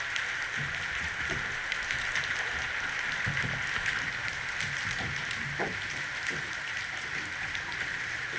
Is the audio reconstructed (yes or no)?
no